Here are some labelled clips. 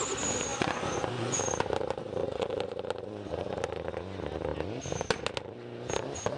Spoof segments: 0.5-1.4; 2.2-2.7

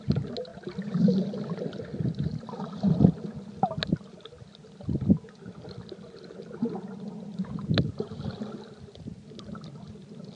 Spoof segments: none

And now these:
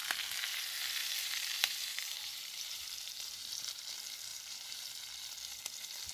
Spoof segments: 0.0-0.6; 1.0-3.8; 4.3-4.8

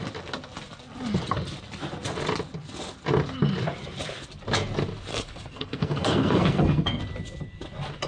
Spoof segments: 5.1-7.0

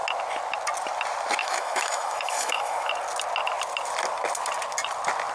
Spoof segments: 1.4-2.9